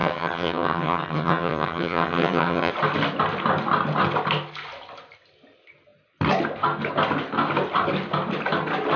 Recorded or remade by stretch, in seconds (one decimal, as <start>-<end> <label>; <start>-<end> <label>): 0.0-2.7 remade; 2.7-9.0 recorded